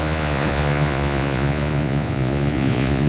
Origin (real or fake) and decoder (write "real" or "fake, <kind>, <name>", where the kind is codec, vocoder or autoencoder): fake, vocoder, Vocos